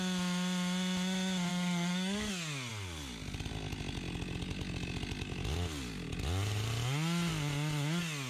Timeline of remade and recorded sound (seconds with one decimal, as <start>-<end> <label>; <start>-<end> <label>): 0.0-1.5 recorded; 1.5-2.3 remade; 2.3-8.3 recorded